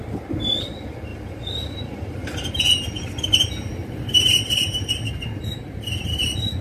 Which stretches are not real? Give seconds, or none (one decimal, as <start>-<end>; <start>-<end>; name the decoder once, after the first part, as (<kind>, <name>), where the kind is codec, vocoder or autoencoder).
1.1-5.1 (vocoder, BigVGAN v2)